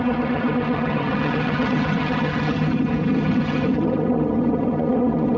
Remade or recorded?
remade